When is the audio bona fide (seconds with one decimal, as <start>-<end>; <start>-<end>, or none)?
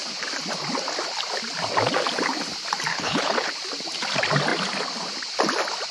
0.0-2.9; 3.5-5.9